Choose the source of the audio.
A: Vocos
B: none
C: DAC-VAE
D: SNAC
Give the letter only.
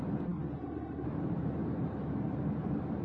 B